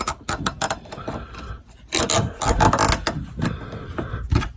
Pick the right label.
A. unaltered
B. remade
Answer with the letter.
A